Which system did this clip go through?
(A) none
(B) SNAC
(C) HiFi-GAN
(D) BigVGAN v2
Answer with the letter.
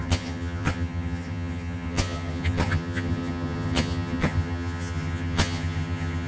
C